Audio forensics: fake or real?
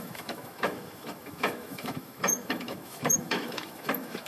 fake